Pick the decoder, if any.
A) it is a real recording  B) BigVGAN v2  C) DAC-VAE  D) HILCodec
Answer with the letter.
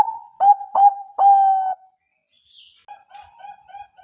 A